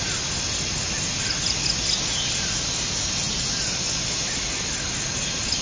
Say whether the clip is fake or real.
real